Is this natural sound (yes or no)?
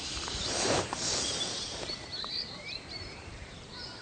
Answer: no